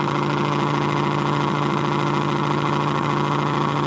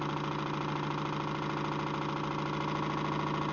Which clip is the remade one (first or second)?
first